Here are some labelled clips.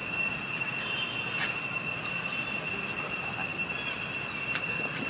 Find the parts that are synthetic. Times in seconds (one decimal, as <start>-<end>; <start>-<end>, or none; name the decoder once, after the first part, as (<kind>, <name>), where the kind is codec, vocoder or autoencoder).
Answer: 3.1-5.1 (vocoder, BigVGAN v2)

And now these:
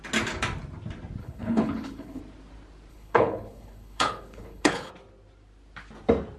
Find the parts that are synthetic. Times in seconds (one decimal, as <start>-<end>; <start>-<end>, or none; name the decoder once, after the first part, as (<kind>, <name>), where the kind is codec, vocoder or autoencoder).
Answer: 1.2-2.2 (codec, HILCodec); 2.9-4.9

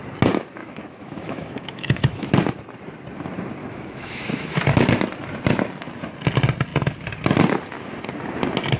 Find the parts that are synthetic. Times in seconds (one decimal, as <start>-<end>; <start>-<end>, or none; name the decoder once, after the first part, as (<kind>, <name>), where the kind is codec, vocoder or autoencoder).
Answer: 0.6-2.3 (autoencoder, DAC-VAE); 3.6-4.6

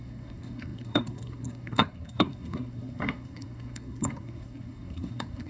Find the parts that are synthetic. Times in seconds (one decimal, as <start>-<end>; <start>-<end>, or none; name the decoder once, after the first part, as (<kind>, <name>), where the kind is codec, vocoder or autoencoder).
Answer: 0.0-5.5 (codec, SNAC)

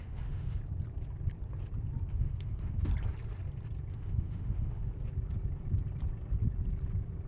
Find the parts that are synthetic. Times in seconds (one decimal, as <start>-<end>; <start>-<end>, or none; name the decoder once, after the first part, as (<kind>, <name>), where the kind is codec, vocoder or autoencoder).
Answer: 0.0-0.6 (autoencoder, DAC-VAE); 2.1-2.9; 3.9-4.8

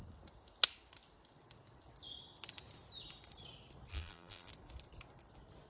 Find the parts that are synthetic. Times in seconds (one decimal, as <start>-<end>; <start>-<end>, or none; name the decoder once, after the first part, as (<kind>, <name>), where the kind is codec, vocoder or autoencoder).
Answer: 3.9-4.5 (vocoder, BigVGAN v2)

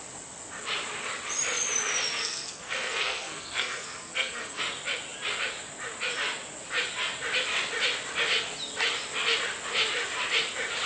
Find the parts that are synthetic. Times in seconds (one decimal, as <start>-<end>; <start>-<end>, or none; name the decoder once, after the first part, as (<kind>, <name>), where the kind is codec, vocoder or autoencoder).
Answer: 2.2-4.6 (codec, SNAC)